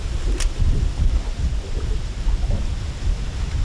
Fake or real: fake